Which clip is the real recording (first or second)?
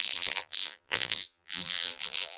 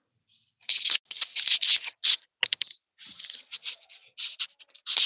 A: second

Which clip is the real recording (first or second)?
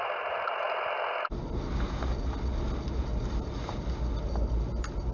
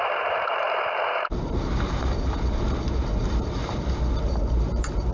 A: first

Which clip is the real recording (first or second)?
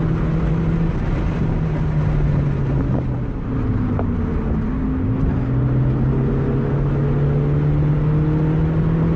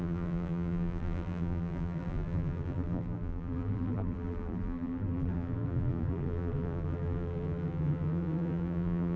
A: first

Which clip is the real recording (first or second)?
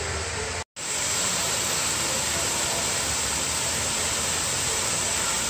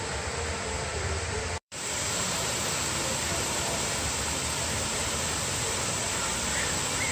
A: first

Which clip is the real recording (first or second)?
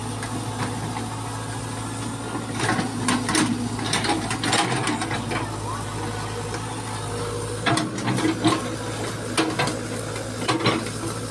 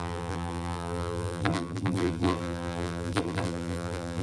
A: first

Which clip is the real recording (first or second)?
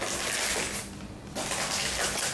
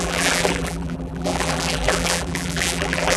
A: first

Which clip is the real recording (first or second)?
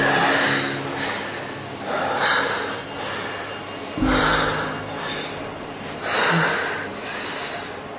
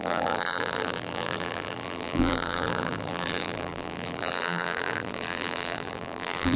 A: first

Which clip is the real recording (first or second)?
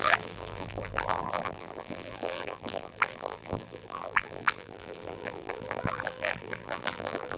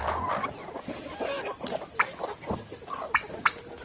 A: second